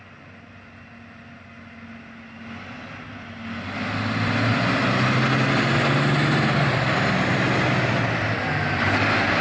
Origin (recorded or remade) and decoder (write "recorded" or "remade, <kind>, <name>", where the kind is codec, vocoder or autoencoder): recorded